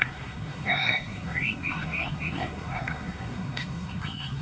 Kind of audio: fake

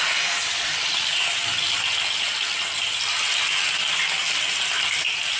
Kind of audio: real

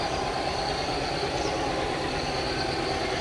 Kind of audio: real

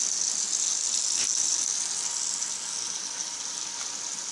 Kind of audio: real